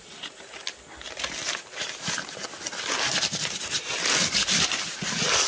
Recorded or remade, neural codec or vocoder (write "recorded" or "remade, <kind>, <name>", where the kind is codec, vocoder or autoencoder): recorded